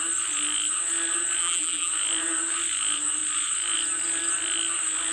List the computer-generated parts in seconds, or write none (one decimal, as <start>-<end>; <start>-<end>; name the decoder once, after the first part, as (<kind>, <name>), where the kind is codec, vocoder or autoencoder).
1.4-1.9 (vocoder, BigVGAN v2)